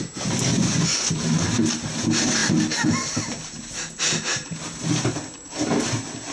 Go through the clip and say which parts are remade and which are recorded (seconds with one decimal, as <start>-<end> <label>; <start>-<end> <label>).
0.0-0.5 recorded; 0.5-1.1 remade; 1.1-6.3 recorded